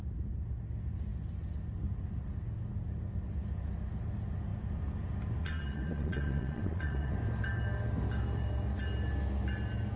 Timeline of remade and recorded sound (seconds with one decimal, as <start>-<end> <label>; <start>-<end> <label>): 0.0-5.4 recorded; 5.4-7.1 remade; 7.1-10.0 recorded

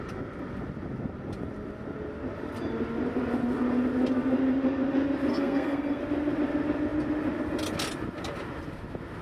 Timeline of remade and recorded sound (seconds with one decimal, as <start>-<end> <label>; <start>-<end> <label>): 0.0-5.3 recorded; 5.3-6.0 remade; 6.0-9.2 recorded

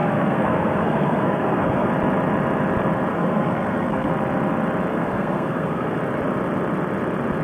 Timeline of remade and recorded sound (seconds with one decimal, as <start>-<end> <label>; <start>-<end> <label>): 0.0-1.9 remade; 1.9-3.1 recorded; 3.1-4.1 remade; 4.1-4.9 recorded; 4.9-6.0 remade; 6.0-7.4 recorded

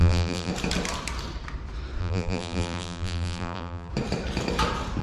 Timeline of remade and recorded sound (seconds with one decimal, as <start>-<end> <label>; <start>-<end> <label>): 0.0-0.5 remade; 0.5-2.0 recorded; 2.0-3.9 remade; 3.9-5.0 recorded

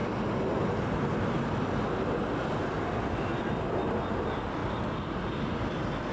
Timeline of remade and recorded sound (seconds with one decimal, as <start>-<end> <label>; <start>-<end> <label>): 0.0-6.1 recorded

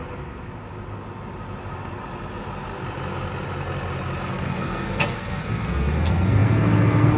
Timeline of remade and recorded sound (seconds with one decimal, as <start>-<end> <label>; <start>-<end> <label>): 0.0-4.3 recorded; 4.3-7.2 remade

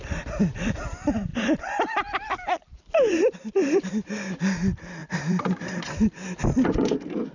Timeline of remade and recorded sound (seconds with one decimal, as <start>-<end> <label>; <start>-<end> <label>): 0.0-1.3 recorded; 1.3-3.9 remade; 3.9-5.0 recorded; 5.0-6.7 remade; 6.7-7.3 recorded